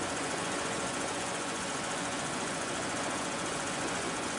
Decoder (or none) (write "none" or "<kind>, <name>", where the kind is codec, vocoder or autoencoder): vocoder, Vocos